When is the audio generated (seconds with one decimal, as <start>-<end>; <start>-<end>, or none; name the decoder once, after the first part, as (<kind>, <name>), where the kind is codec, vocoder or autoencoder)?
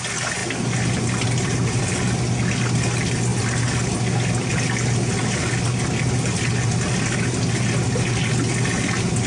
none